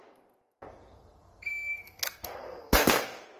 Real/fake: fake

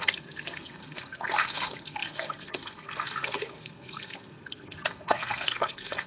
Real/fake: fake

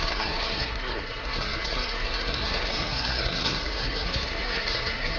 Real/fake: fake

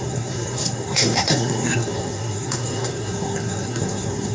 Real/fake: fake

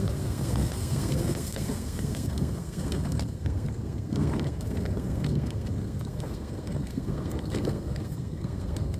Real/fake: fake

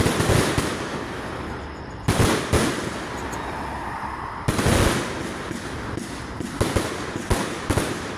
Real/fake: real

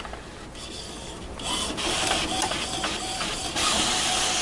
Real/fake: real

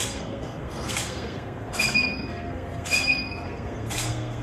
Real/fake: fake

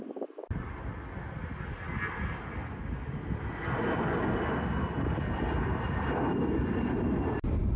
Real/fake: real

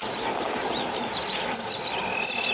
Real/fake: real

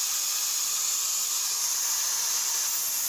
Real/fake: real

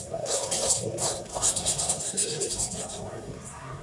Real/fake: fake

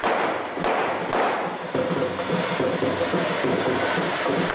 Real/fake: real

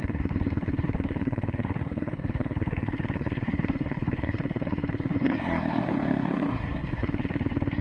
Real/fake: fake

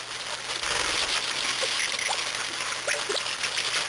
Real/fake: real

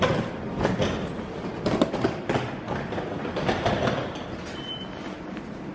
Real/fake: real